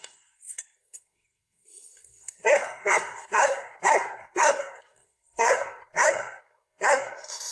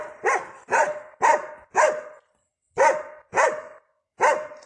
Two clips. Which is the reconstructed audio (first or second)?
first